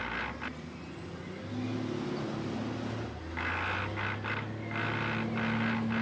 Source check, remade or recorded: recorded